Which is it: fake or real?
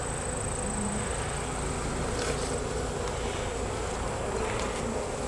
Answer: real